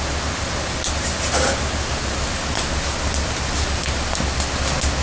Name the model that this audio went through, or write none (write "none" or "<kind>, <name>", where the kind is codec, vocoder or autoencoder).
none